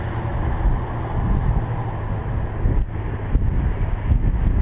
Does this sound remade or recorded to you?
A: recorded